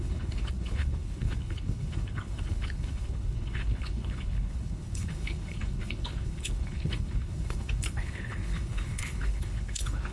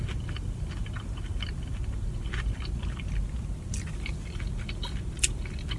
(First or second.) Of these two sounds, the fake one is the first